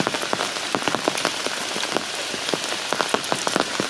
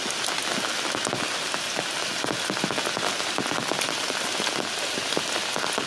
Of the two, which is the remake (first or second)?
first